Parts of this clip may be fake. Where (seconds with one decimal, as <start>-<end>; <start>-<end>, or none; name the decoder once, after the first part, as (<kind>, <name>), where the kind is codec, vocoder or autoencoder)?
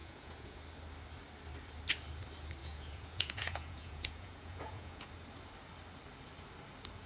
0.0-0.6 (vocoder, Vocos); 2.6-5.1